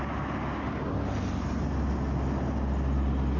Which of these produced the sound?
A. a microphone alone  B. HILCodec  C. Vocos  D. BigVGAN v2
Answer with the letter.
A